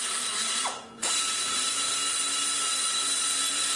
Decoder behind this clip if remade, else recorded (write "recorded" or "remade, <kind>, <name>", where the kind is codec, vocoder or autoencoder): recorded